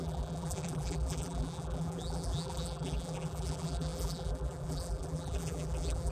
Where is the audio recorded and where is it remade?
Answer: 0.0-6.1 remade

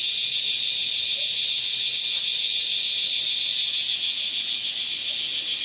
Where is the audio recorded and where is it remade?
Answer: 0.0-5.6 recorded

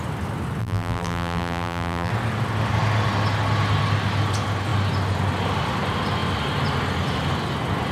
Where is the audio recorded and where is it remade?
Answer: 0.0-0.6 recorded; 0.6-2.1 remade; 2.1-7.9 recorded

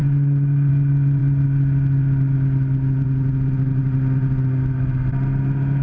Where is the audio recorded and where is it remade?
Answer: 0.0-5.8 recorded

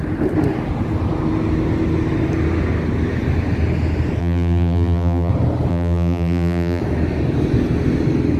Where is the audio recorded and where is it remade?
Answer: 0.0-4.2 recorded; 4.2-5.3 remade; 5.3-5.7 recorded; 5.7-6.8 remade; 6.8-8.4 recorded

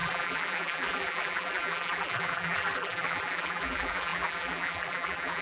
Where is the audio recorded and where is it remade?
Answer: 0.0-5.4 remade

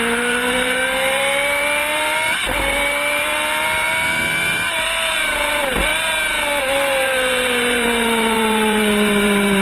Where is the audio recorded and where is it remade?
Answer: 0.0-5.9 remade; 5.9-6.6 recorded; 6.6-9.6 remade